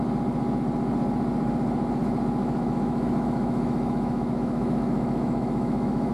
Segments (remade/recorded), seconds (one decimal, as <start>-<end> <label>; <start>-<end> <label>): 0.0-2.4 recorded; 2.4-6.1 remade